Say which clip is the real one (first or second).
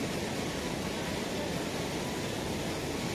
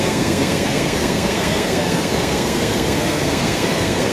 first